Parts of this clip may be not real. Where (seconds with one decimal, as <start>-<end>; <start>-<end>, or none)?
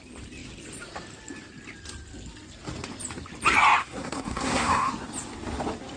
3.8-4.9